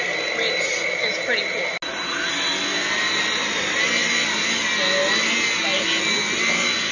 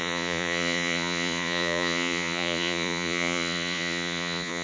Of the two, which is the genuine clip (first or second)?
first